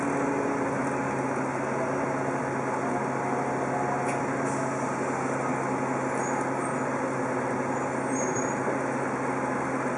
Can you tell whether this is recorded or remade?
recorded